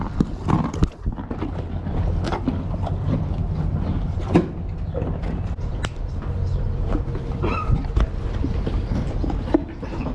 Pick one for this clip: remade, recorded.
recorded